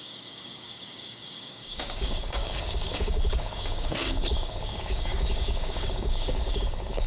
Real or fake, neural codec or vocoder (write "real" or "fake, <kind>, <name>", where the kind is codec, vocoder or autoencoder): fake, codec, DAC